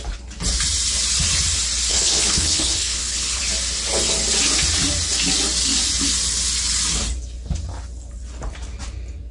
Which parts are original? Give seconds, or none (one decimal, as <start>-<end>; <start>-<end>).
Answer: 0.0-1.9; 3.4-9.3